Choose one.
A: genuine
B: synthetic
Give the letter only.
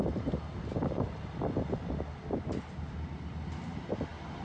A